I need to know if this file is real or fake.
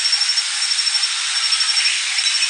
real